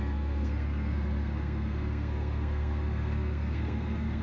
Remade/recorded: remade